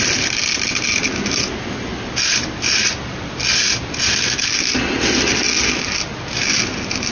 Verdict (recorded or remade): recorded